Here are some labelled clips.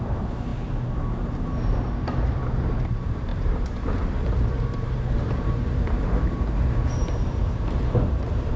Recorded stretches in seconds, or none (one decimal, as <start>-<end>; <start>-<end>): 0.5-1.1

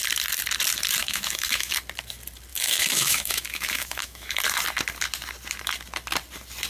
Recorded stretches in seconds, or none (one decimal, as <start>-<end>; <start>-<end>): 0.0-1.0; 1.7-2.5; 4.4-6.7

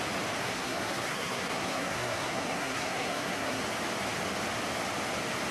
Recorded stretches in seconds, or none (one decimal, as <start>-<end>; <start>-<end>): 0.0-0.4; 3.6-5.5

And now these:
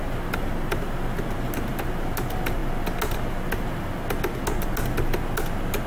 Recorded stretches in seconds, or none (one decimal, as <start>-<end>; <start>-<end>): 0.0-5.9

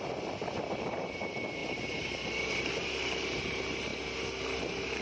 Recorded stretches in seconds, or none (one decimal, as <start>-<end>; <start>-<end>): 0.0-5.0